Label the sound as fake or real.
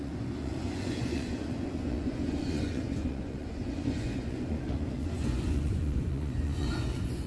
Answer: fake